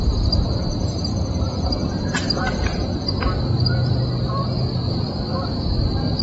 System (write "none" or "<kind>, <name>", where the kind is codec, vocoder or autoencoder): none